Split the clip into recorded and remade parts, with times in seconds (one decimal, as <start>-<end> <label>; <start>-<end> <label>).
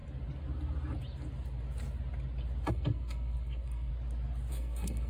0.0-2.7 recorded; 2.7-3.9 remade; 3.9-4.5 recorded; 4.5-5.1 remade